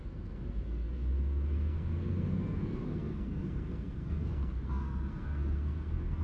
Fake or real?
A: fake